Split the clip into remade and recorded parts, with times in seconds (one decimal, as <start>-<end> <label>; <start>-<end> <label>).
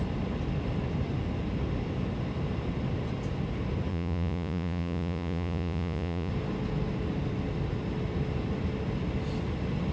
0.0-3.9 recorded; 3.9-6.3 remade; 6.3-9.9 recorded